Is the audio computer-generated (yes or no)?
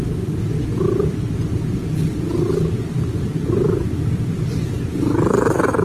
no